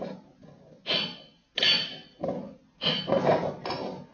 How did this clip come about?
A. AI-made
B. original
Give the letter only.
B